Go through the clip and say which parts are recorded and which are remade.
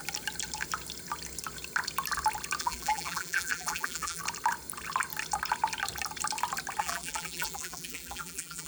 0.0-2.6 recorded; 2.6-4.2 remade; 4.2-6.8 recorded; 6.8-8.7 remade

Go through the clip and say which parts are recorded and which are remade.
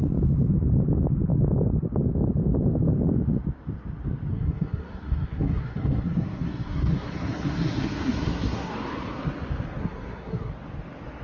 0.0-4.3 recorded; 4.3-8.7 remade; 8.7-9.8 recorded; 9.8-10.5 remade; 10.5-11.2 recorded